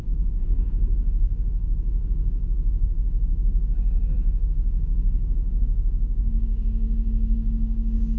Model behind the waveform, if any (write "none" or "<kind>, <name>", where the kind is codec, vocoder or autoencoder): codec, DAC